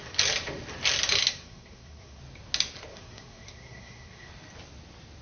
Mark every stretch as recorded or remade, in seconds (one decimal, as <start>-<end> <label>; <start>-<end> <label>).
0.0-1.3 recorded; 1.3-2.2 remade; 2.2-2.9 recorded; 2.9-4.3 remade; 4.3-5.2 recorded

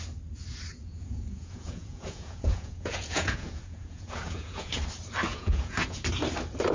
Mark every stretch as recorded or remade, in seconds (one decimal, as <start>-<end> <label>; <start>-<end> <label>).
0.0-0.8 recorded; 0.8-4.8 remade; 4.8-5.3 recorded; 5.3-6.1 remade; 6.1-6.7 recorded

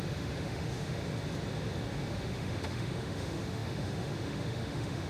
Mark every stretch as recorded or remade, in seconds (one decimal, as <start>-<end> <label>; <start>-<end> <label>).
0.0-1.0 remade; 1.0-2.1 recorded; 2.1-5.1 remade

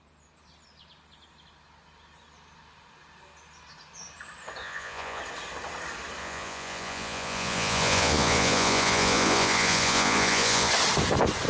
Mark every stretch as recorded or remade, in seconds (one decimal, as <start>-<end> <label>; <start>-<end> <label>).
0.0-4.6 recorded; 4.6-5.2 remade; 5.2-6.2 recorded; 6.2-10.7 remade; 10.7-11.5 recorded

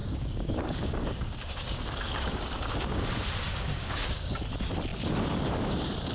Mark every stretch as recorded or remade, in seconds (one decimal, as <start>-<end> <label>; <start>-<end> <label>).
0.0-3.1 remade; 3.1-3.5 recorded; 3.5-4.3 remade; 4.3-6.1 recorded

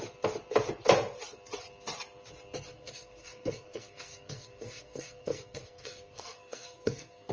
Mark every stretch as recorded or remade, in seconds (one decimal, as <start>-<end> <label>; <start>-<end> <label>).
0.0-2.7 recorded; 2.7-7.3 remade

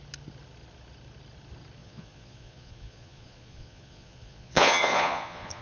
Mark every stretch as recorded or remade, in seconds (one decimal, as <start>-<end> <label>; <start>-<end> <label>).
0.0-1.8 recorded; 1.8-5.6 remade

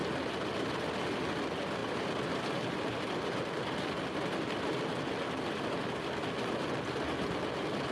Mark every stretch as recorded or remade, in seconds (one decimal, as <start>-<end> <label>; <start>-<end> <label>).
0.0-7.9 recorded